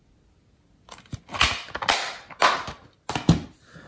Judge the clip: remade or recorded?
recorded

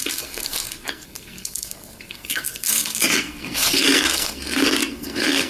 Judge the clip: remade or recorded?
remade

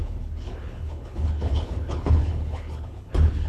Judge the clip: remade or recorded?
remade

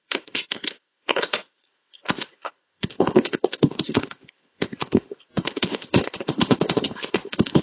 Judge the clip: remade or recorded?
remade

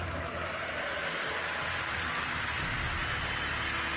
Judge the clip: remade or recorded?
recorded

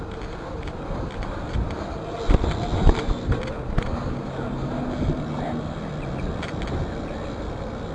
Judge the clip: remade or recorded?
recorded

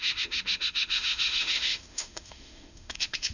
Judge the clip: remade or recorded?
remade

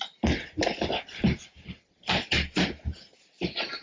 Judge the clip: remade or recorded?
recorded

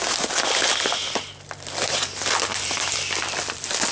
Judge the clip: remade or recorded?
recorded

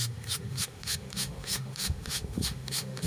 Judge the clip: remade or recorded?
remade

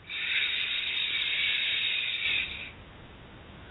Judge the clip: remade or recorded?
recorded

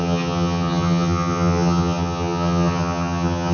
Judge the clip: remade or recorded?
remade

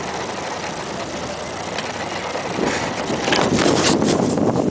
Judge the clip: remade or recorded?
recorded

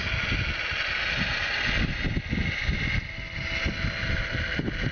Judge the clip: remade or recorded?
recorded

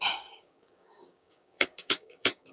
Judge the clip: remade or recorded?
remade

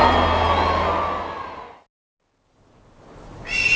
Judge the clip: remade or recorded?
recorded